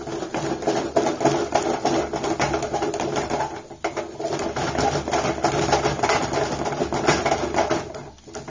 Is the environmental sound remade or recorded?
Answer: recorded